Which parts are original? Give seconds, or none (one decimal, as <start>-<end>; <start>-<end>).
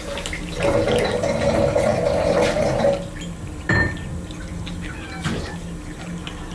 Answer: 0.0-6.5